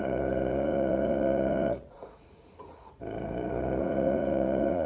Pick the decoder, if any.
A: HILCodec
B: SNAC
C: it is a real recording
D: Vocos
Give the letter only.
D